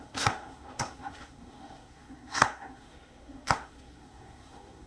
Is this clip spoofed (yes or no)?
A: yes